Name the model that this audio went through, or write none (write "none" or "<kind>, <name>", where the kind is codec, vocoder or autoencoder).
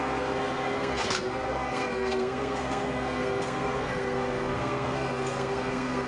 codec, SNAC